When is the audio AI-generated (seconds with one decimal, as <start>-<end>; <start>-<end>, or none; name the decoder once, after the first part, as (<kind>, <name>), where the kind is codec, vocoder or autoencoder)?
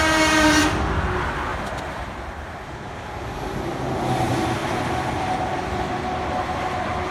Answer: 1.5-2.6 (vocoder, BigVGAN v2); 4.6-5.9